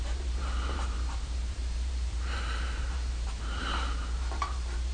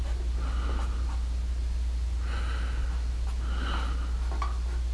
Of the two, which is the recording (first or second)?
second